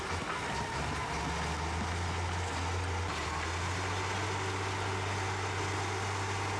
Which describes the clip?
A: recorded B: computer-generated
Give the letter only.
A